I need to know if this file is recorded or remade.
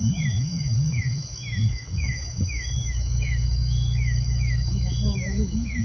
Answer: remade